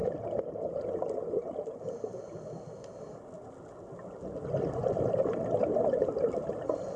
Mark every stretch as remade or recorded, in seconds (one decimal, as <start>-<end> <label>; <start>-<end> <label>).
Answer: 0.0-7.0 recorded